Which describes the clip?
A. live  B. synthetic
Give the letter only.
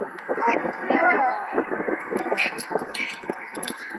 B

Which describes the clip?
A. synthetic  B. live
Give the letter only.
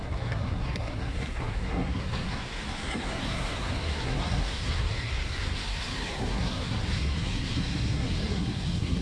A